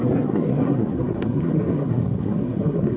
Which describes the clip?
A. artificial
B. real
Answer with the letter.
A